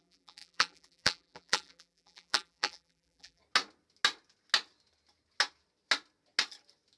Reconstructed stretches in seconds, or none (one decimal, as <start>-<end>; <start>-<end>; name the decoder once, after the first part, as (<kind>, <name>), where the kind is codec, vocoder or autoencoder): 0.0-3.4 (vocoder, BigVGAN v2)